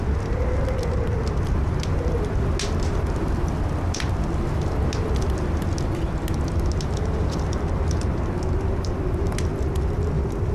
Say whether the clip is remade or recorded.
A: recorded